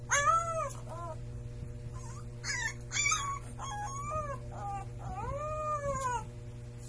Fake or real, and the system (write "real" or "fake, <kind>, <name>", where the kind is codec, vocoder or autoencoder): real